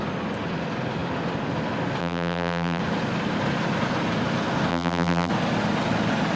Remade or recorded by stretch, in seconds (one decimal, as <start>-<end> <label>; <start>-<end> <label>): 0.0-2.0 recorded; 2.0-2.8 remade; 2.8-4.7 recorded; 4.7-5.3 remade; 5.3-6.4 recorded